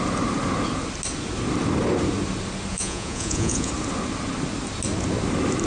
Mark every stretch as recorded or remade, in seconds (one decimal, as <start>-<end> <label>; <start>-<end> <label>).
0.0-2.7 recorded; 2.7-3.7 remade; 3.7-5.7 recorded